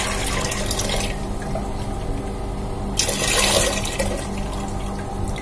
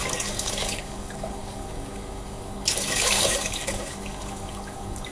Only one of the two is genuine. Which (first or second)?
first